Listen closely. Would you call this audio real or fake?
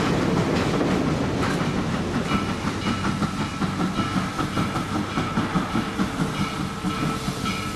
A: real